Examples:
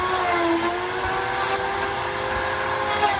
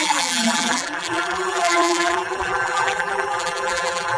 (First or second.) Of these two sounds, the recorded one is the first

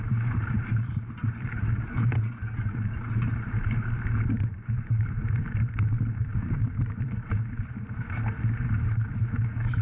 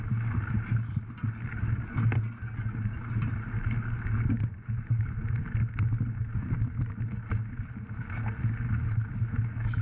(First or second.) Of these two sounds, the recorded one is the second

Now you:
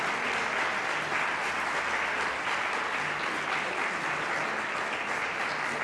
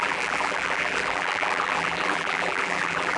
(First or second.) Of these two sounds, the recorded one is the first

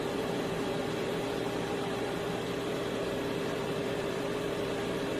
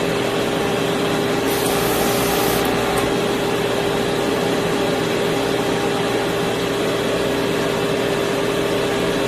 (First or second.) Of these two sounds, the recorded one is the second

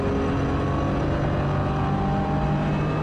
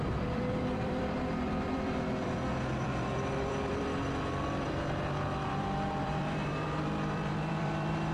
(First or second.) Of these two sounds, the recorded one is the first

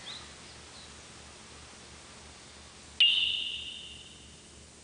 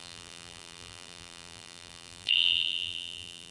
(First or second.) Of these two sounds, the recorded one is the first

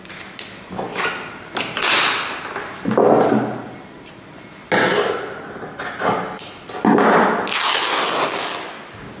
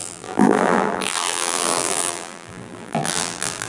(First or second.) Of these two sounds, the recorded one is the first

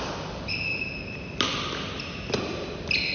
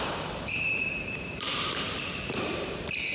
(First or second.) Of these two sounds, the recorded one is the first